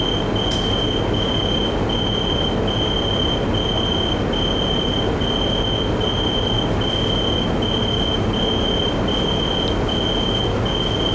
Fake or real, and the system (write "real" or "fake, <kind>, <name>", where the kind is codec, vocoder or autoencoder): real